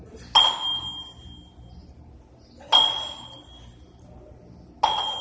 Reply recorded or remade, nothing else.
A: recorded